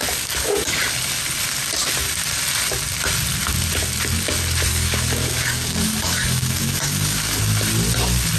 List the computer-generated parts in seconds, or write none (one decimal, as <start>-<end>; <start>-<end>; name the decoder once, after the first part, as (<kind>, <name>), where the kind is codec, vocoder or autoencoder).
0.0-0.8 (codec, DAC); 4.7-7.4